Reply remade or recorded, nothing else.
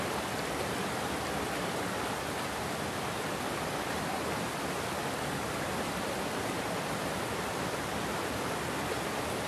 remade